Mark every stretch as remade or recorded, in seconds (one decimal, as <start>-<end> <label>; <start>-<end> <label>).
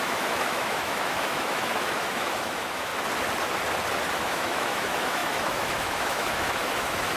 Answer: 0.0-2.9 remade; 2.9-4.1 recorded; 4.1-7.2 remade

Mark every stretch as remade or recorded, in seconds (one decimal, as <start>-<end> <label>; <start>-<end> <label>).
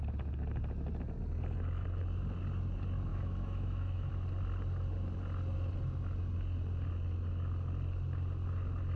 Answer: 0.0-3.1 recorded; 3.1-4.1 remade; 4.1-9.0 recorded